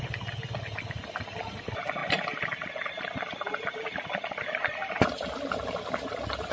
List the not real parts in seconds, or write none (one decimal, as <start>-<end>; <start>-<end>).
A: none